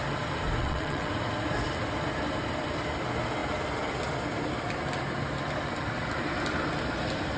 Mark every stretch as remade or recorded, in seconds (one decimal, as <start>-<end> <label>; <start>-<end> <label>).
0.0-0.6 recorded; 0.6-1.1 remade; 1.1-7.4 recorded